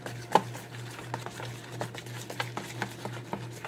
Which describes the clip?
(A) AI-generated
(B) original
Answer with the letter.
B